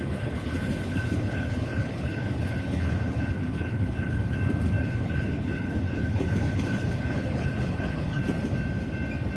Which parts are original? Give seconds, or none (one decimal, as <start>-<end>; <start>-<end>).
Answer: 4.2-4.8; 8.2-9.4